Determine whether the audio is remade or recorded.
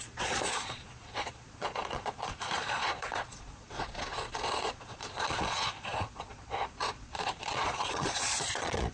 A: remade